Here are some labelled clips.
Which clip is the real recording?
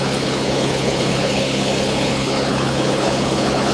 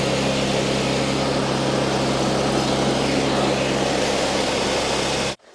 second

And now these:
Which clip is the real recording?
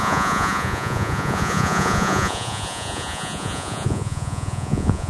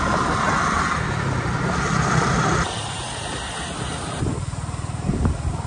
second